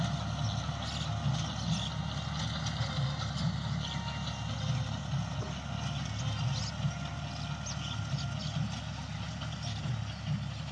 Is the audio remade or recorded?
recorded